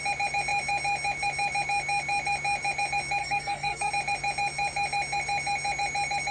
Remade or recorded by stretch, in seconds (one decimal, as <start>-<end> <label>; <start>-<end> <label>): 0.0-3.2 recorded; 3.2-3.9 remade; 3.9-6.3 recorded